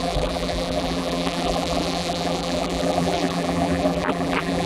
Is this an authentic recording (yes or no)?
no